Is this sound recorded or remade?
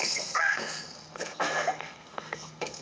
remade